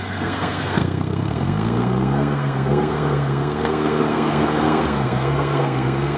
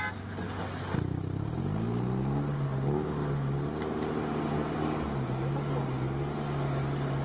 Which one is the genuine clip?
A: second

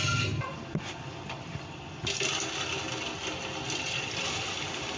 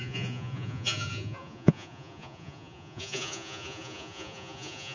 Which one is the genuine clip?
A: first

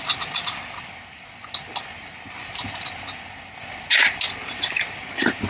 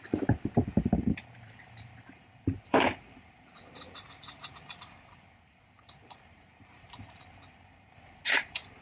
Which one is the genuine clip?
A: first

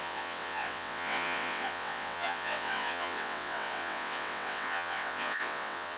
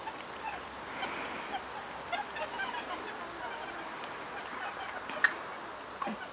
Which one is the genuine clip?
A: second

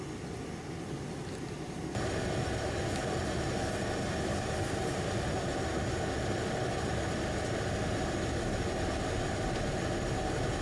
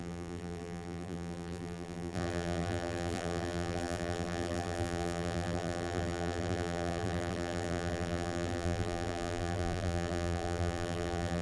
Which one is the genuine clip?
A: first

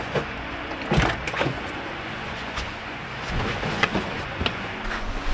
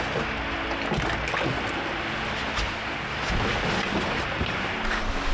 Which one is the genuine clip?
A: second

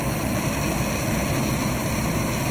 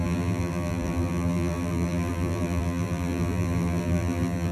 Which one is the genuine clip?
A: first